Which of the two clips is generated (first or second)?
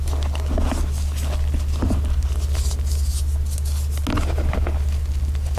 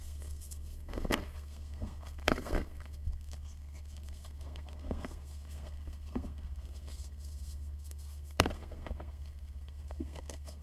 second